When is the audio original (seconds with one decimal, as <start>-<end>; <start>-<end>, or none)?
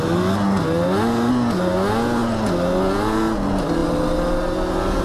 0.0-5.0